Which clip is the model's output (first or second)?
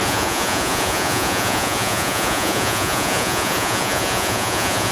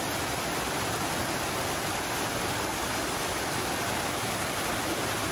first